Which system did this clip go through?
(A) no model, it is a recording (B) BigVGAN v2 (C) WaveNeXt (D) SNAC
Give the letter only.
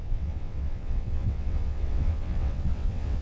C